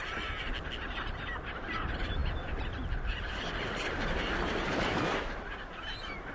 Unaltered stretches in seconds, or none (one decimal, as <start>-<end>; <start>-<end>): none